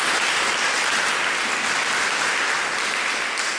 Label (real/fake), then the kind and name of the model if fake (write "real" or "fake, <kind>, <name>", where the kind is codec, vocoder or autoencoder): real